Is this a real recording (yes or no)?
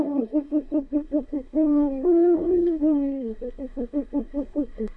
no